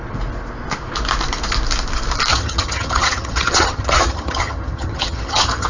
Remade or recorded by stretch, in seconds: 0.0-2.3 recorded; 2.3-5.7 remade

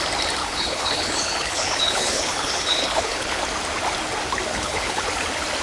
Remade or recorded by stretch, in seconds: 0.0-0.4 recorded; 0.4-3.4 remade; 3.4-4.5 recorded; 4.5-5.1 remade; 5.1-5.6 recorded